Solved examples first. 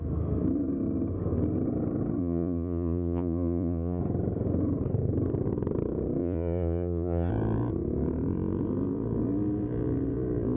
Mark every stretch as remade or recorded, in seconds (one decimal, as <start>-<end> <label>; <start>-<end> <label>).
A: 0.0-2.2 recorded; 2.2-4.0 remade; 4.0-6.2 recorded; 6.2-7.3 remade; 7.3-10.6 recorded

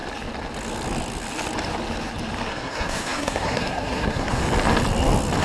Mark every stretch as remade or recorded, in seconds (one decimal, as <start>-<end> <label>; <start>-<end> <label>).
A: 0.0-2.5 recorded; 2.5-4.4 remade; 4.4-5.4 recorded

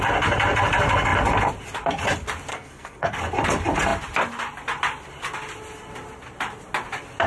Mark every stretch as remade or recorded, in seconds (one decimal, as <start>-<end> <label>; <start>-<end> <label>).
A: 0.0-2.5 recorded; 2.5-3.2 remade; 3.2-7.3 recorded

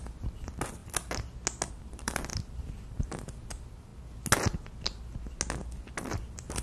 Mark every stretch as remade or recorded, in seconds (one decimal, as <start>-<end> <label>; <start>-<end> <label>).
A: 0.0-0.8 remade; 0.8-1.7 recorded; 1.7-3.9 remade; 3.9-6.1 recorded; 6.1-6.6 remade

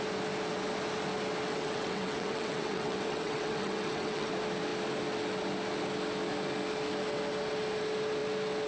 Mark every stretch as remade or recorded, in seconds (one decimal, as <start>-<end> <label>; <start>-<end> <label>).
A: 0.0-1.5 recorded; 1.5-4.3 remade; 4.3-8.7 recorded